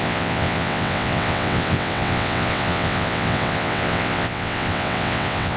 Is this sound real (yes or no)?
no